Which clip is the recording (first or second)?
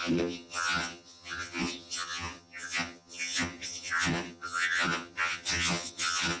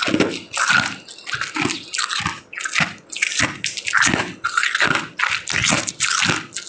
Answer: second